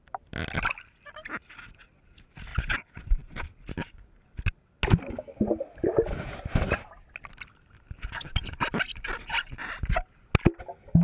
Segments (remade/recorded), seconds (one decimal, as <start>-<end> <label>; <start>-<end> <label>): 0.0-9.6 recorded; 9.6-10.3 remade; 10.3-11.0 recorded